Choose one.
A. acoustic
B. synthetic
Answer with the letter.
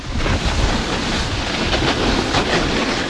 A